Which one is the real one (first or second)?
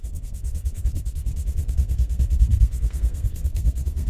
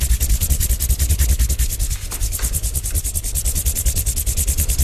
second